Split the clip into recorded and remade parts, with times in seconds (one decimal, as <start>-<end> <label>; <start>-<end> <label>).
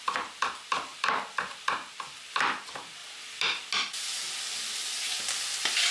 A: 0.0-3.0 recorded; 3.0-5.9 remade